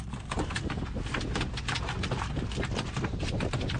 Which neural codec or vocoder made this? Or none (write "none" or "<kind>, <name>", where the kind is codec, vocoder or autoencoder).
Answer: none